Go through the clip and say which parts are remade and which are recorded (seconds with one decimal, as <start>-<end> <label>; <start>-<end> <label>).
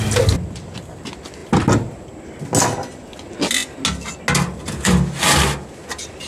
0.0-6.3 recorded